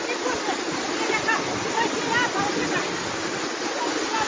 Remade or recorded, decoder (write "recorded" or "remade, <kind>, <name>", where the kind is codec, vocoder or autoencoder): recorded